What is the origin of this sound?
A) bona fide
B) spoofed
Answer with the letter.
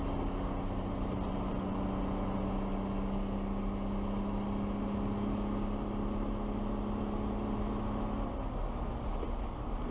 A